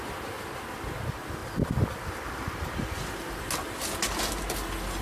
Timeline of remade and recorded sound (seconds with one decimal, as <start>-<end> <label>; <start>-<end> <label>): 0.0-5.0 recorded